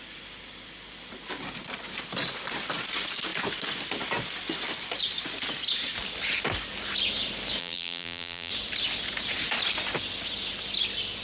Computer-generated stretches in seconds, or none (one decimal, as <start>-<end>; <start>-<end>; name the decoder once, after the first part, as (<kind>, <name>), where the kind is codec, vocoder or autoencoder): 7.6-8.5 (vocoder, BigVGAN v2)